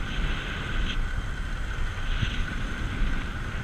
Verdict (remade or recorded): recorded